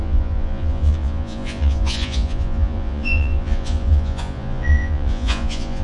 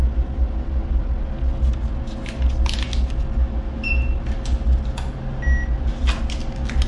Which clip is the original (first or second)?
second